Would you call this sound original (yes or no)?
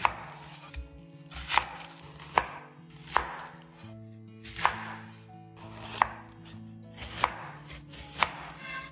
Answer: yes